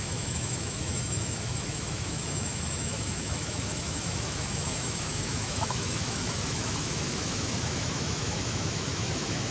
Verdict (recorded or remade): remade